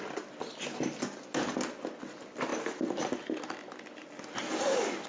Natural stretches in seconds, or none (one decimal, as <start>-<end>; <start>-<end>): 0.0-5.1